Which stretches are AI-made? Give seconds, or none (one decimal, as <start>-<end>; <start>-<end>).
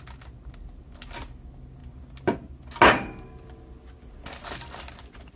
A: none